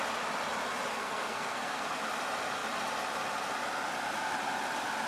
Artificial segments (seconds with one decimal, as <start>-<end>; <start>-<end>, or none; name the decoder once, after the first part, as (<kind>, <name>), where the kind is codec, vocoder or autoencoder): 0.9-2.0 (codec, SNAC)